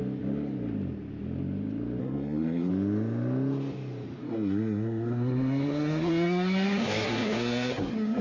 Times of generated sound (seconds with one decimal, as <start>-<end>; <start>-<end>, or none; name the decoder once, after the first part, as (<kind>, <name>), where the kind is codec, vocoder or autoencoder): 2.0-2.7 (codec, SNAC); 4.2-8.2